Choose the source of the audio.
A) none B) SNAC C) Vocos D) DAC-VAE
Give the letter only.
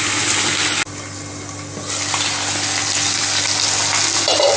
A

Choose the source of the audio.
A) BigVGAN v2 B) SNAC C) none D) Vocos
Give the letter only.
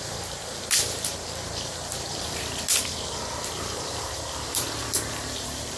A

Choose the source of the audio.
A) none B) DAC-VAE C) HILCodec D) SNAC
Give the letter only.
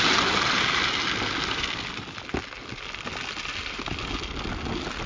A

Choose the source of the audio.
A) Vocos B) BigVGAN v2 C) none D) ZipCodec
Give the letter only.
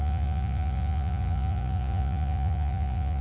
A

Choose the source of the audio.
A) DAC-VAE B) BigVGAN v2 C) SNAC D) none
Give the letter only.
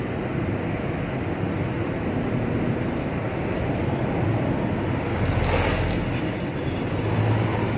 D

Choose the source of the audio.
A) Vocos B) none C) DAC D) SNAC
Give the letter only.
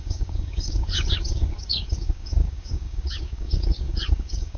C